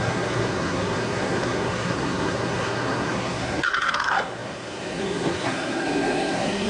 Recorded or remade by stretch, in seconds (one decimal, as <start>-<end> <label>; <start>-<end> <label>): 0.0-6.7 remade